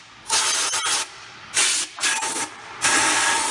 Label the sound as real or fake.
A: real